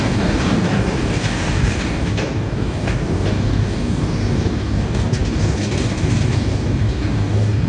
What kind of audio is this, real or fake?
fake